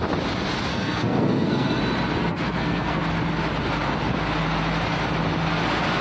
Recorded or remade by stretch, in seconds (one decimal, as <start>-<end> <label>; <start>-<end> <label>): 0.0-0.7 recorded; 0.7-1.8 remade; 1.8-2.2 recorded; 2.2-3.0 remade; 3.0-6.0 recorded